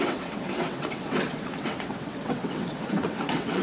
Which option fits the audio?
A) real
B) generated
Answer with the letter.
B